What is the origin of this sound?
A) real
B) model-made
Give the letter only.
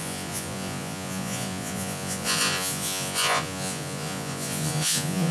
B